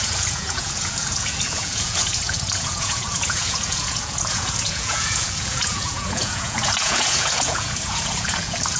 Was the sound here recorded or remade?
remade